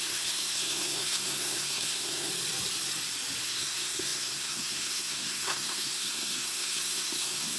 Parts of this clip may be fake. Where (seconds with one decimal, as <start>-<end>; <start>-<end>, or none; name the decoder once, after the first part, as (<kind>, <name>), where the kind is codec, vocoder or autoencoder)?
0.0-2.3 (codec, SNAC); 3.4-7.6